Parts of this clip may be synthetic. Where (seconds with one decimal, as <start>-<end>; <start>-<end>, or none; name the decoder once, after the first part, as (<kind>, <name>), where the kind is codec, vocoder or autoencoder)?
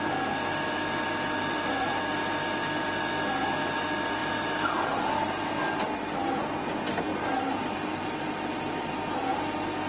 4.2-5.0 (vocoder, BigVGAN v2); 7.1-9.0